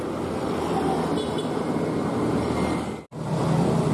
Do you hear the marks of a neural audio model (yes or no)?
no